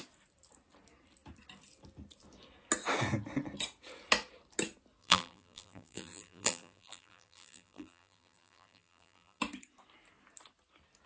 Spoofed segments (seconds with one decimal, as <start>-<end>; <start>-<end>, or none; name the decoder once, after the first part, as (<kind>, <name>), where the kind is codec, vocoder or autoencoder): 5.0-9.4 (vocoder, BigVGAN v2)